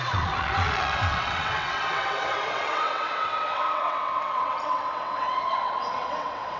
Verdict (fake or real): fake